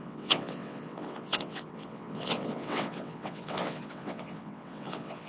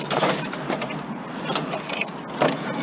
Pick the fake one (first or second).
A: first